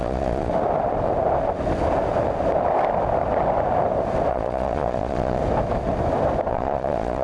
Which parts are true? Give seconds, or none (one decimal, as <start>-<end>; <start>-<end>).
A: 0.5-4.3; 5.4-6.5